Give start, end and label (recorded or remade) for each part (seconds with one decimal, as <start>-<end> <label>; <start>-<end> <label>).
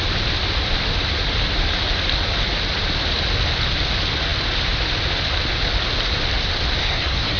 0.0-6.8 recorded; 6.8-7.4 remade